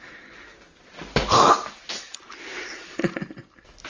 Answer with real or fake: real